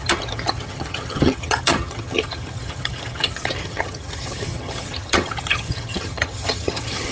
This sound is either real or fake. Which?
fake